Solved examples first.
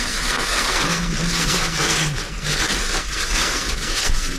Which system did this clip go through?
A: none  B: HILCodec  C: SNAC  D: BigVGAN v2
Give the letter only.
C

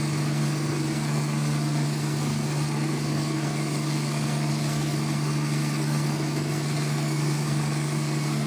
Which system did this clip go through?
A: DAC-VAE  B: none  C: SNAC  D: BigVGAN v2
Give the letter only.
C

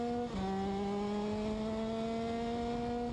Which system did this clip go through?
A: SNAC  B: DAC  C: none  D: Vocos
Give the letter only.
C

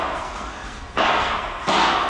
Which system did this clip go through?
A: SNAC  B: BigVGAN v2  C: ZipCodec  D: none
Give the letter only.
A